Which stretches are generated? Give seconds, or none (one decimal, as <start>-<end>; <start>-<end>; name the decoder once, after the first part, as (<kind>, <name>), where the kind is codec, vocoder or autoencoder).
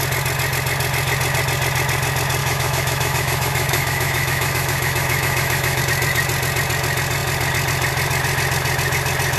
2.4-5.8 (autoencoder, DAC-VAE)